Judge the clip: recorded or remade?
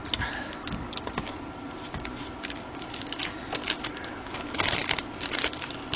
recorded